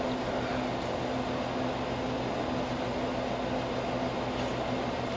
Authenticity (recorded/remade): recorded